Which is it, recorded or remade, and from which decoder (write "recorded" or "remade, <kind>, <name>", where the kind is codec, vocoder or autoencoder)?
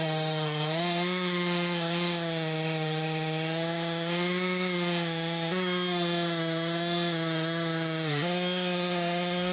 remade, autoencoder, DAC-VAE